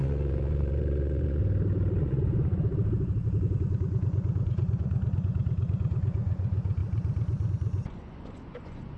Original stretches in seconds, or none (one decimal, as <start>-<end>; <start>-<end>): 1.4-2.0; 2.7-3.4; 6.8-7.5